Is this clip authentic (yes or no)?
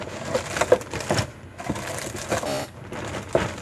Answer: yes